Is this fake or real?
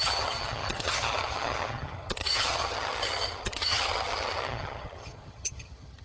fake